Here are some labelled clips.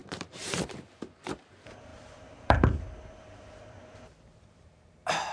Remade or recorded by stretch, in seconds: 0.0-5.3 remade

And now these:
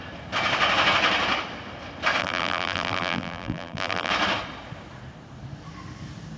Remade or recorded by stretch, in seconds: 0.0-2.2 recorded; 2.2-4.1 remade; 4.1-6.4 recorded

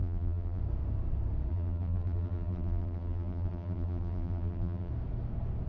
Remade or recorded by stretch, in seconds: 0.0-0.6 remade; 0.6-1.5 recorded; 1.5-4.9 remade; 4.9-5.7 recorded